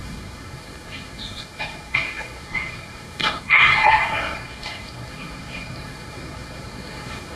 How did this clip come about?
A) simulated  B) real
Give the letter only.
A